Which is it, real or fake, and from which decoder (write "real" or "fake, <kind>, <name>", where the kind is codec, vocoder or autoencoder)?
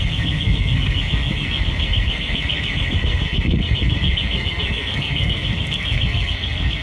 fake, codec, SNAC